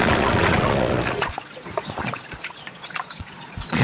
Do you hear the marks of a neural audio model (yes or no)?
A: yes